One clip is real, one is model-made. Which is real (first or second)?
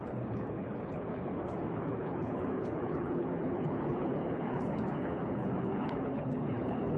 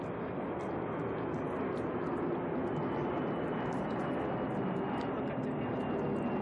second